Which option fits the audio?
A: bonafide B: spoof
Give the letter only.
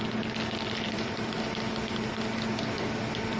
A